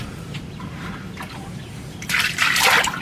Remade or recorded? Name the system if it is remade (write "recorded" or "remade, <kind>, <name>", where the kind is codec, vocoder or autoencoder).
recorded